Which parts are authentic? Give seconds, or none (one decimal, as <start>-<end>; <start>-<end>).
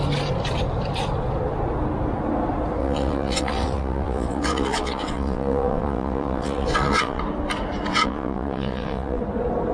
0.0-2.8; 7.2-7.9; 9.2-9.7